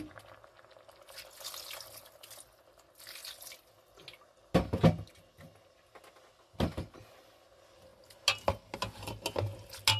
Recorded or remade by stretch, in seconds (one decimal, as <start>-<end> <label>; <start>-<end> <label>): 0.0-10.0 recorded